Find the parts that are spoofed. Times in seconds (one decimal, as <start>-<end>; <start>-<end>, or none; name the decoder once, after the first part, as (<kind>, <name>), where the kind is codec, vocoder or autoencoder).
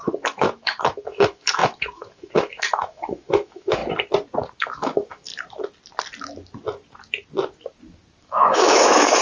0.0-3.8 (autoencoder, DAC-VAE); 4.6-5.3; 8.2-9.2